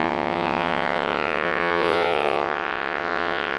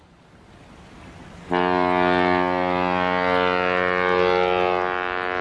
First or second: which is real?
second